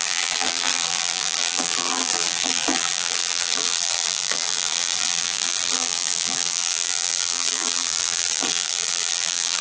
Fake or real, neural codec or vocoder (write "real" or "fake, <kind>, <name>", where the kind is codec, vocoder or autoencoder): fake, vocoder, BigVGAN v2